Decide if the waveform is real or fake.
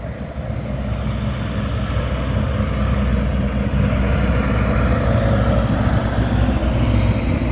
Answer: real